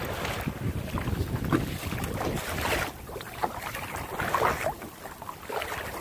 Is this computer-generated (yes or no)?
no